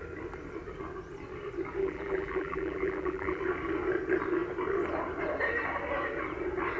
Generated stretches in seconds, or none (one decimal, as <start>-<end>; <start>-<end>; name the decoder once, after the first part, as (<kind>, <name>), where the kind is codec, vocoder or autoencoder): 1.8-3.4 (vocoder, BigVGAN v2)